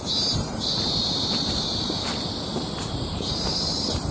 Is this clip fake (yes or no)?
yes